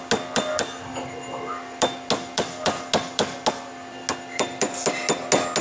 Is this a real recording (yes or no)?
yes